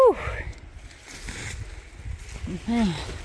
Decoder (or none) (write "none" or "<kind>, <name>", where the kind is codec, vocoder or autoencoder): none